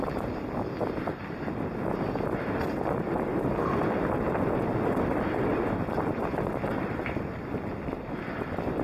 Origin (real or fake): real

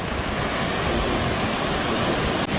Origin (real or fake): real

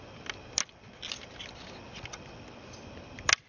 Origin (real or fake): real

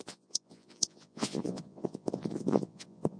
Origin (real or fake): fake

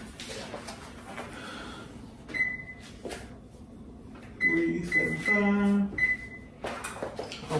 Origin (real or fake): real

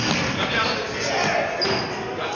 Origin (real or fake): real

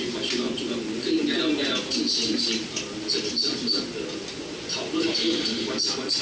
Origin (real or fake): real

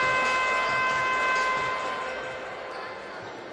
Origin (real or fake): real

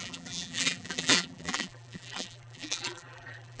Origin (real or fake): fake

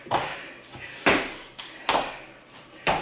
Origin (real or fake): real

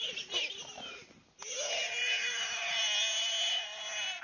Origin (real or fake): real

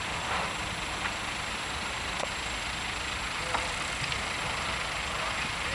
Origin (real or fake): fake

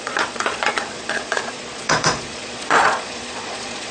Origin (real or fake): fake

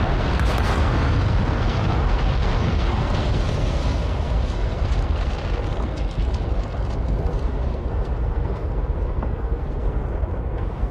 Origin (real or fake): fake